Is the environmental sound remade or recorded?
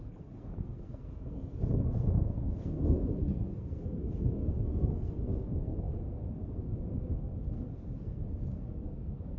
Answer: remade